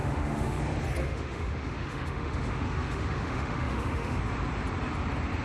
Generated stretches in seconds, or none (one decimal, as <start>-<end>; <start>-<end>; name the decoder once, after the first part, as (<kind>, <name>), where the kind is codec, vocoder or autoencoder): 0.0-0.6 (autoencoder, DAC-VAE); 1.0-4.2